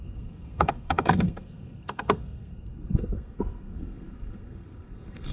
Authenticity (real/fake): fake